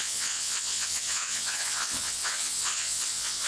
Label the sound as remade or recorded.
remade